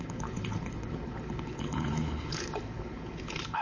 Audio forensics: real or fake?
fake